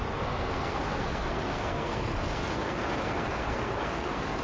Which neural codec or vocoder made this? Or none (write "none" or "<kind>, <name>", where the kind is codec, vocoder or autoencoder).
codec, SNAC